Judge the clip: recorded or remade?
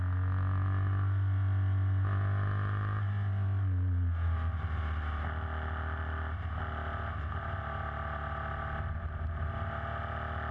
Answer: recorded